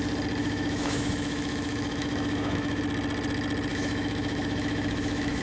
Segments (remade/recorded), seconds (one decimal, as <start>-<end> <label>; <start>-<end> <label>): 0.0-0.4 recorded; 0.4-2.8 remade; 2.8-3.7 recorded; 3.7-5.4 remade